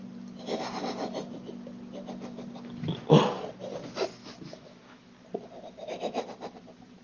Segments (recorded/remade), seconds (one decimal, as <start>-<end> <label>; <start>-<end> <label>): 0.0-4.2 recorded; 4.2-5.1 remade; 5.1-7.0 recorded